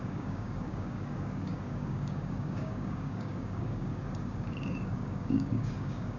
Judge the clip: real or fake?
fake